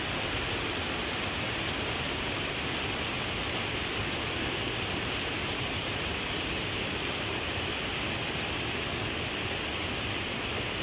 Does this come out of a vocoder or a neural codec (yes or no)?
no